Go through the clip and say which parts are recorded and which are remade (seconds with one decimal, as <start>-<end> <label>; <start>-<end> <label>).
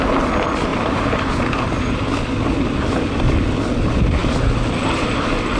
0.0-0.7 recorded; 0.7-1.3 remade; 1.3-5.6 recorded